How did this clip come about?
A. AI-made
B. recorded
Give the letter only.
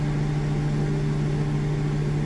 B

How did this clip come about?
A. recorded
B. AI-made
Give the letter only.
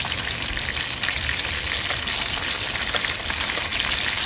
A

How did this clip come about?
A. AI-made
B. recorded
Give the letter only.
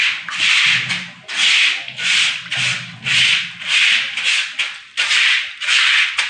B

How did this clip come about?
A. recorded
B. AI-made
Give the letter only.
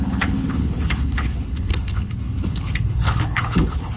B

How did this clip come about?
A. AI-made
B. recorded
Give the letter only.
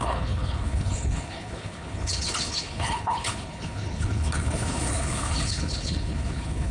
A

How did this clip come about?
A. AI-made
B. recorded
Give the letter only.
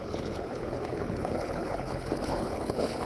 A